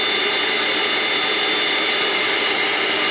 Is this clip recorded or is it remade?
recorded